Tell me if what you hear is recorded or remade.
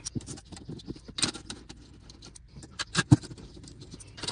remade